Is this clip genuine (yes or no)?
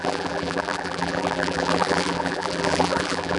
no